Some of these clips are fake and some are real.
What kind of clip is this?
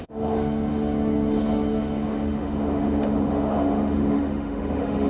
fake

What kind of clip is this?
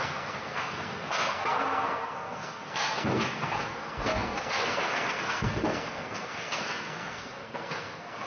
fake